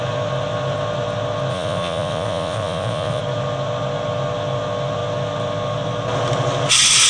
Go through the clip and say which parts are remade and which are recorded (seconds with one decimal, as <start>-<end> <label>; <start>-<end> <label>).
0.0-1.5 recorded; 1.5-3.2 remade; 3.2-7.1 recorded

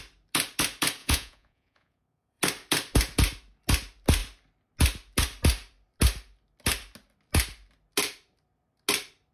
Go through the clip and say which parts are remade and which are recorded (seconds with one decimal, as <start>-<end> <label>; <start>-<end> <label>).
0.0-1.0 recorded; 1.0-2.4 remade; 2.4-9.3 recorded

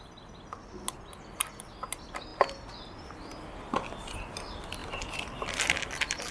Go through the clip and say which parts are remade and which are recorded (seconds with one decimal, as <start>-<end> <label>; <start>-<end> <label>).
0.0-6.3 recorded

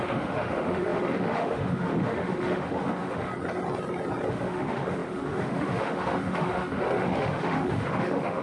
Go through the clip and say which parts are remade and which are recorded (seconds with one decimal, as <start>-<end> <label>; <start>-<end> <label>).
0.0-3.3 remade; 3.3-4.3 recorded; 4.3-8.4 remade

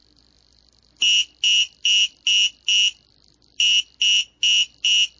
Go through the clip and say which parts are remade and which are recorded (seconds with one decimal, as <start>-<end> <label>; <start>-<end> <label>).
0.0-5.2 recorded

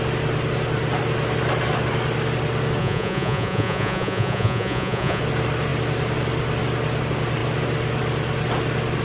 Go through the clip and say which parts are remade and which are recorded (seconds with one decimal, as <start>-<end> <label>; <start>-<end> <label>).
0.0-2.8 recorded; 2.8-5.2 remade; 5.2-9.0 recorded

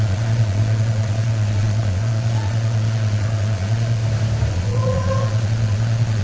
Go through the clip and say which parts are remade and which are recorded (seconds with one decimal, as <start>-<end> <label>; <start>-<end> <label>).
0.0-4.0 remade; 4.0-4.5 recorded; 4.5-6.2 remade